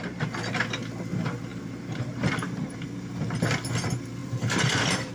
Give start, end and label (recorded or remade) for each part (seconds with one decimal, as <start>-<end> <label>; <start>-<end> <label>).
0.0-1.5 recorded; 1.5-3.2 remade; 3.2-4.2 recorded; 4.2-5.1 remade